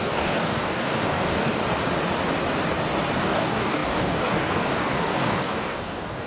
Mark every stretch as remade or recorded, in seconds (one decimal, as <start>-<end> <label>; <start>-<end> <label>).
0.0-1.6 remade; 1.6-3.2 recorded; 3.2-6.3 remade